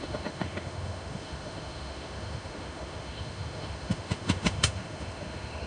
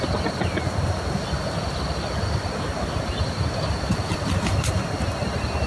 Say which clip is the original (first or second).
second